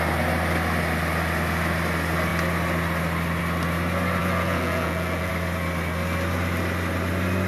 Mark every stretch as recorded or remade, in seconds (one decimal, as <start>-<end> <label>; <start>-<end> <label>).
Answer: 0.0-4.2 recorded; 4.2-5.3 remade; 5.3-7.5 recorded